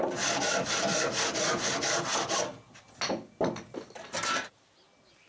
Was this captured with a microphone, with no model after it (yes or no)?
yes